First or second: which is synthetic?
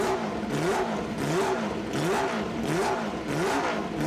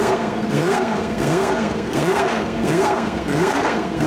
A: second